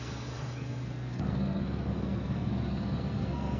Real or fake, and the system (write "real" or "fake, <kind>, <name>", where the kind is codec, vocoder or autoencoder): fake, codec, SNAC